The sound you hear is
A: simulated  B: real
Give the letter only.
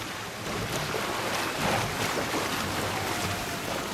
B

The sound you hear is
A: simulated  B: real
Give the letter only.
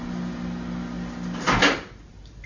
B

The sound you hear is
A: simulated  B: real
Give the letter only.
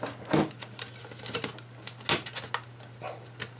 B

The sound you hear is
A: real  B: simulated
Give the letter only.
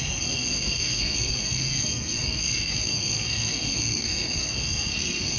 B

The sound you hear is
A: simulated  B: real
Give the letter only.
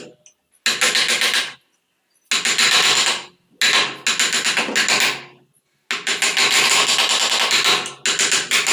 B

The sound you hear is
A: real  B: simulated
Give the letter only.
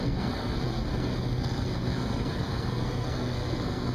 B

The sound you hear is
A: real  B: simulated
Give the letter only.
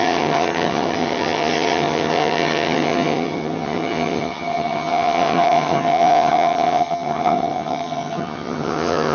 B